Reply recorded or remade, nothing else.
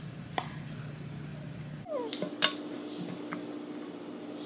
recorded